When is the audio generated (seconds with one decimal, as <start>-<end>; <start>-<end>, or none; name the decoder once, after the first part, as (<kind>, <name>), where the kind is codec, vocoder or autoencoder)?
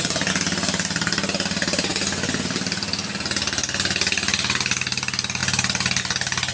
none